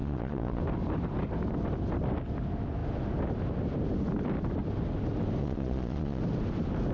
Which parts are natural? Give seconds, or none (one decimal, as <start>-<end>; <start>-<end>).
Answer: 0.6-5.4; 6.2-6.9